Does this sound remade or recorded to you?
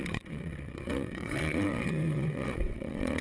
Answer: remade